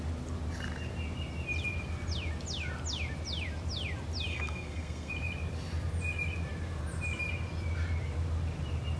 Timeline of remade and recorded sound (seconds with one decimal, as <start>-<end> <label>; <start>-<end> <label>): 0.0-4.3 recorded; 4.3-5.1 remade; 5.1-9.0 recorded